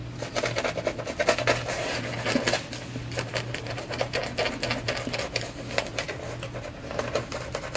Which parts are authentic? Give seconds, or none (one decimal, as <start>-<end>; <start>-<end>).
0.0-2.7; 4.2-6.6